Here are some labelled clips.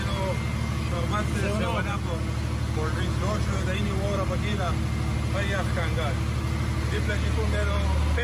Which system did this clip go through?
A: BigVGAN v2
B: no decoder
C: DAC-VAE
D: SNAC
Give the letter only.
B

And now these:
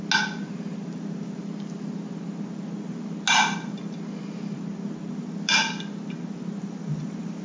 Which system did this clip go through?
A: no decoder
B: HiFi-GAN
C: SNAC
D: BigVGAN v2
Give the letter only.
A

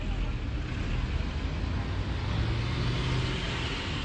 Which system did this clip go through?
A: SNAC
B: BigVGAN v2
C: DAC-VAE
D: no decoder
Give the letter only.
D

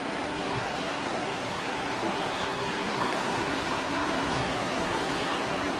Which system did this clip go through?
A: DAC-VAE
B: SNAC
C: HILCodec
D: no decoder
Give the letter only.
B